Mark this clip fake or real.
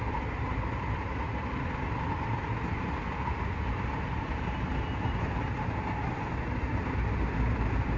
real